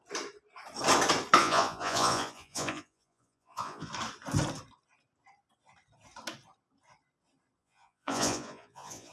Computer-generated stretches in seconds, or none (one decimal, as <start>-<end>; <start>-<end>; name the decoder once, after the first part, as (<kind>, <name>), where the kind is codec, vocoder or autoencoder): 1.4-3.9 (vocoder, Vocos); 7.6-9.1